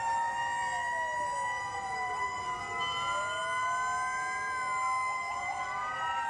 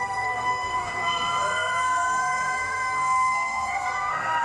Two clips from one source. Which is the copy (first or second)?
second